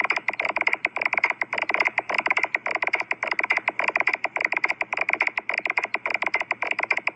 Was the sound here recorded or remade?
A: recorded